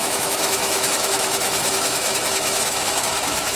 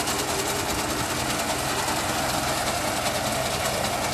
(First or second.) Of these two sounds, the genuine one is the second